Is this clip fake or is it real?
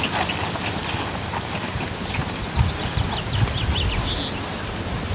real